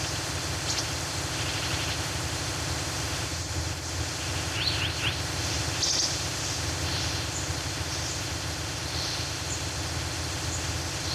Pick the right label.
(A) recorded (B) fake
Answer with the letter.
A